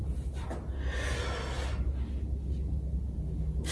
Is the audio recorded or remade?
recorded